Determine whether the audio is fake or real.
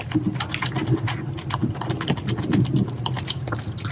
real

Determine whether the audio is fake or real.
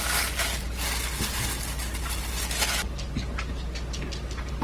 real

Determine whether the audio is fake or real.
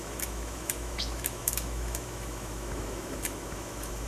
fake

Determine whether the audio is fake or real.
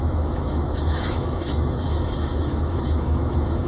fake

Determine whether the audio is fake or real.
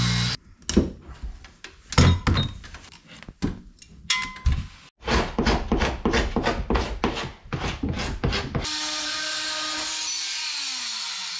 real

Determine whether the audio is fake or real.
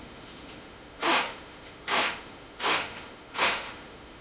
fake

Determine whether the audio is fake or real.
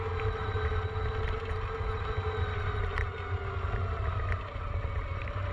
real